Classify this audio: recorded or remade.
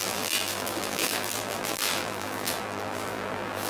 remade